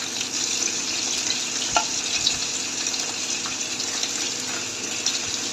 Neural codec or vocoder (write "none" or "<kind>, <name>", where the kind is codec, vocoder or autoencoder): none